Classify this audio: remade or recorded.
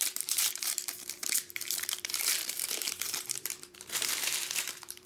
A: remade